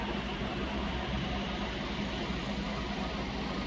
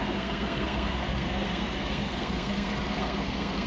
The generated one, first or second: second